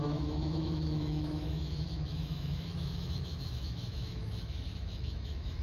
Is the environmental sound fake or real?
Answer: fake